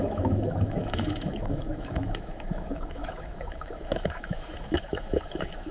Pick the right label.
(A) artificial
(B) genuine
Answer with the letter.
A